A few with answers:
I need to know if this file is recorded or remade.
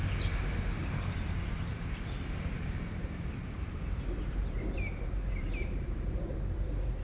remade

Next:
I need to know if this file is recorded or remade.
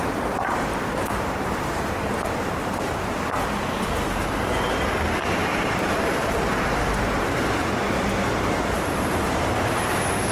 remade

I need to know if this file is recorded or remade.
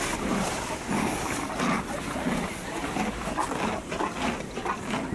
recorded